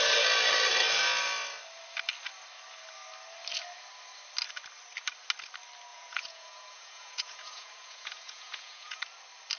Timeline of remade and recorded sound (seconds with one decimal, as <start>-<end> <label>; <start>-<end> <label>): 0.0-5.9 recorded; 5.9-9.0 remade; 9.0-9.6 recorded